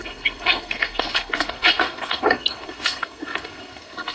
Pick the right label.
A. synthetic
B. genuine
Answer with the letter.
A